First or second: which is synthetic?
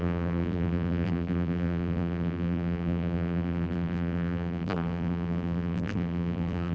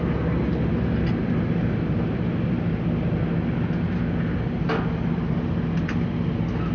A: first